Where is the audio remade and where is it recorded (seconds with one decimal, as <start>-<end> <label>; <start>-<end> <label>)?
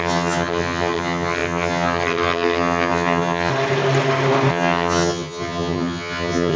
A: 0.0-3.5 remade; 3.5-4.5 recorded; 4.5-6.6 remade